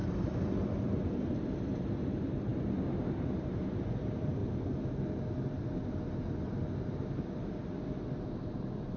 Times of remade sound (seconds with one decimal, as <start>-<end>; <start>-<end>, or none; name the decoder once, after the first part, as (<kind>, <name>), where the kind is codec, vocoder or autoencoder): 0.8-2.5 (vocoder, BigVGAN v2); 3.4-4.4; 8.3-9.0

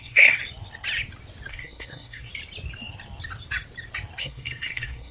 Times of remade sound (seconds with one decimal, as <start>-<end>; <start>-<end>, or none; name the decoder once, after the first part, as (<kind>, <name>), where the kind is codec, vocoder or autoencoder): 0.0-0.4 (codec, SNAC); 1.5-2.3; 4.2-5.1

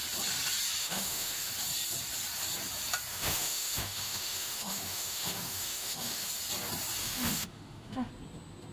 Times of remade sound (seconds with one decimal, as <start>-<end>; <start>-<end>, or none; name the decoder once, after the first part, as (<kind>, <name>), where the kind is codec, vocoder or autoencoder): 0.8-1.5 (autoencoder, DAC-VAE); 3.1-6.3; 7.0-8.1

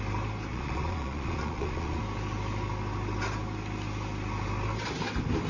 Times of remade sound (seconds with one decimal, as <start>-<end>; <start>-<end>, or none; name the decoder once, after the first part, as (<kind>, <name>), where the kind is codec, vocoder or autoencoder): 0.5-2.0 (vocoder, Vocos)

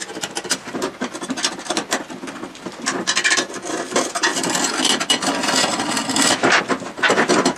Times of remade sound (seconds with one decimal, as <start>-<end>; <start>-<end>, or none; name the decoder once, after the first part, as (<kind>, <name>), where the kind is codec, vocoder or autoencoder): none

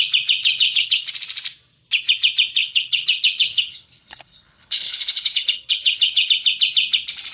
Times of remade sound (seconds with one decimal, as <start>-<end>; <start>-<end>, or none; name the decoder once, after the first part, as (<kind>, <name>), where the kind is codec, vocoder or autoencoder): 0.4-1.1 (codec, HILCodec); 2.6-6.3

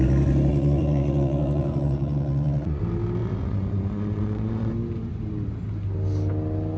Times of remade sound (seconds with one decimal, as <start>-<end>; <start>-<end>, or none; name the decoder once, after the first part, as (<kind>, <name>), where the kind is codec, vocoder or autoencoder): 0.5-2.8 (vocoder, Vocos); 3.2-4.7